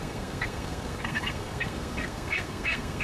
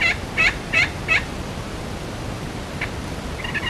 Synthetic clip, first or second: first